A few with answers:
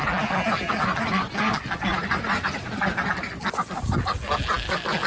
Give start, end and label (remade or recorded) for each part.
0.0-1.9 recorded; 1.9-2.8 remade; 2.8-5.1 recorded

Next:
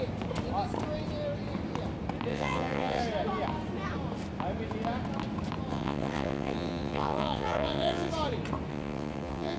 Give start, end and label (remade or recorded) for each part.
0.0-2.3 recorded; 2.3-3.0 remade; 3.0-5.7 recorded; 5.7-8.1 remade; 8.1-8.7 recorded; 8.7-9.6 remade

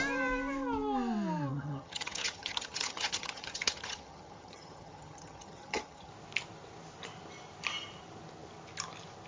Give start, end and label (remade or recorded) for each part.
0.0-1.5 recorded; 1.5-6.1 remade; 6.1-9.3 recorded

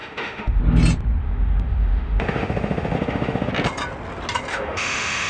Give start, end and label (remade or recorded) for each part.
0.0-0.6 remade; 0.6-1.2 recorded; 1.2-3.5 remade; 3.5-4.5 recorded; 4.5-5.3 remade